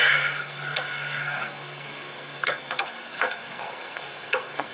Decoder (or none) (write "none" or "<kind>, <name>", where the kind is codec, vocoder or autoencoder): codec, SNAC